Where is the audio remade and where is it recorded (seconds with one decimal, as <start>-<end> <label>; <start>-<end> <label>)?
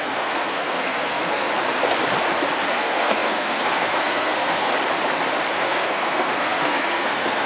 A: 0.0-1.5 remade; 1.5-2.7 recorded; 2.7-4.7 remade; 4.7-5.5 recorded; 5.5-7.5 remade